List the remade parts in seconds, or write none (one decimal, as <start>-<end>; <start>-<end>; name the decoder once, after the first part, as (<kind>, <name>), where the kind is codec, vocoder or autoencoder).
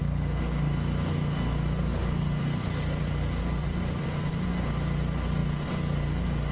1.9-4.5 (vocoder, BigVGAN v2)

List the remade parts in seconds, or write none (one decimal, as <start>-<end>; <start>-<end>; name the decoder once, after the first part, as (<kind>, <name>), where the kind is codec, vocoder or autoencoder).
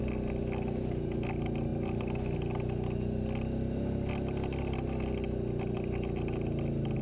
none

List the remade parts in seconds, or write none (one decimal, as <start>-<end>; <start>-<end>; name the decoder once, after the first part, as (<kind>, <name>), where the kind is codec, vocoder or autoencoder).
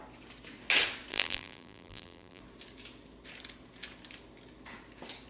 1.1-2.4 (vocoder, BigVGAN v2)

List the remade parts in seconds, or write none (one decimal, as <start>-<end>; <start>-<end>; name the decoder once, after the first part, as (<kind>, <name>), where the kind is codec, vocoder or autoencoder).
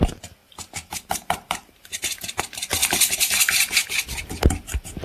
0.4-2.4 (vocoder, BigVGAN v2); 2.8-3.8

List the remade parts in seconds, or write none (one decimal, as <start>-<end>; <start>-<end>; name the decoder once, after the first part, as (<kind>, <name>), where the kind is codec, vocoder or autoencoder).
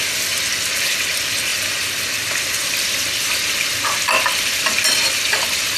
1.5-4.9 (vocoder, BigVGAN v2)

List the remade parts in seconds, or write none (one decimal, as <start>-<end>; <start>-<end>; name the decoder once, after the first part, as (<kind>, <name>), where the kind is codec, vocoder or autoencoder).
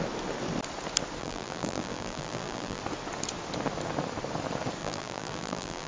1.2-2.8 (vocoder, BigVGAN v2); 4.8-5.9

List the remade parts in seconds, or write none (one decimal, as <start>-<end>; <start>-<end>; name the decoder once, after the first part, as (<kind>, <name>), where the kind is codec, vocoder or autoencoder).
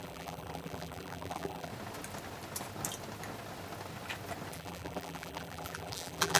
0.0-1.7 (vocoder, BigVGAN v2); 4.5-6.4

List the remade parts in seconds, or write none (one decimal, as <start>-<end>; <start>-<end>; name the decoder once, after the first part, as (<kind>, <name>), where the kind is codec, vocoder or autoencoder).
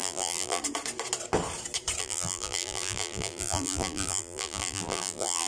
0.0-0.6 (vocoder, BigVGAN v2); 2.0-5.5